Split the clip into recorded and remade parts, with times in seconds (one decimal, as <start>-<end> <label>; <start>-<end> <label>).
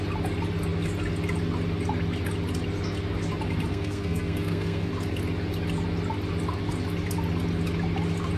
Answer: 0.0-3.7 recorded; 3.7-4.9 remade; 4.9-8.4 recorded